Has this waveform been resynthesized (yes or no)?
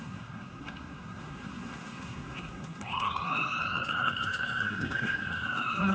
yes